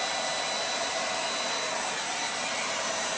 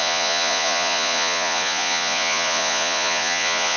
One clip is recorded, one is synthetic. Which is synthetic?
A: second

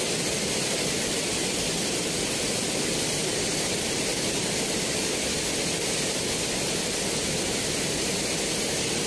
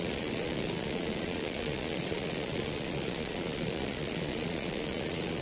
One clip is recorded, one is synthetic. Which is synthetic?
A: second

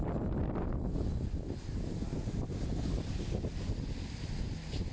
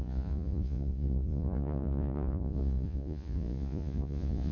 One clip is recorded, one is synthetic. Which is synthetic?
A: second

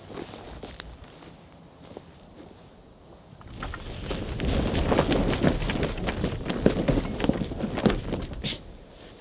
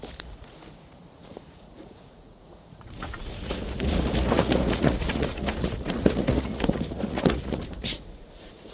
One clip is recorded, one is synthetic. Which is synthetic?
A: second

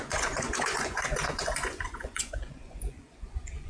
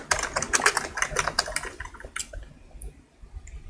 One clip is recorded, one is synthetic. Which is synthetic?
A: first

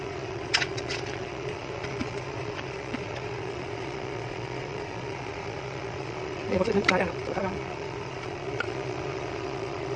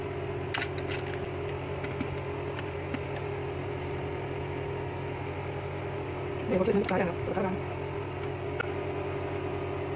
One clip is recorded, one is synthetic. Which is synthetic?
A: first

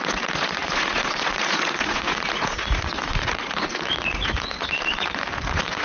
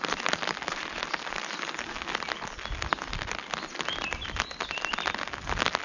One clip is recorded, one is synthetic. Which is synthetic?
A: first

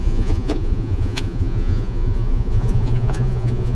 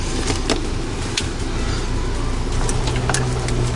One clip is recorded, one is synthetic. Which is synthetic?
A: first